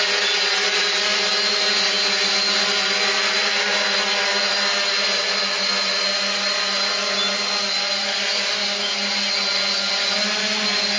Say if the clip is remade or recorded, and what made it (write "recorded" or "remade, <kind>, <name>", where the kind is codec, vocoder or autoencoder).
recorded